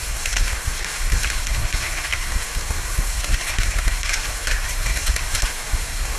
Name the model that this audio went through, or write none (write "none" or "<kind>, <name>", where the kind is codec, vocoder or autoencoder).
codec, SNAC